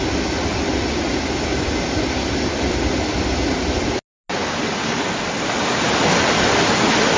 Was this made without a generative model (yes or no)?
yes